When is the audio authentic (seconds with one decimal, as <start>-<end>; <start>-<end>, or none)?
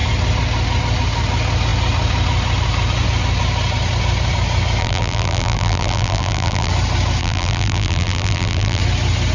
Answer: 0.0-4.8; 6.7-7.2; 8.8-9.3